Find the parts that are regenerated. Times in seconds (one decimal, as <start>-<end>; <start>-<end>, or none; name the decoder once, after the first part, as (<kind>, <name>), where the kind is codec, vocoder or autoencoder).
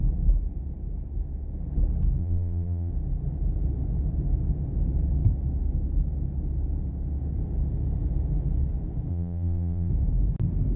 2.2-2.9 (vocoder, BigVGAN v2); 9.1-9.9